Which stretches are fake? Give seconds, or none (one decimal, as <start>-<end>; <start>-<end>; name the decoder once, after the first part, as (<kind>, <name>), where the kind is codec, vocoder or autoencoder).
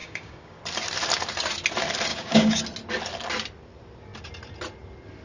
0.0-0.6 (codec, DAC); 2.1-2.6